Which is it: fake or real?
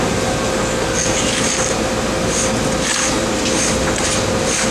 real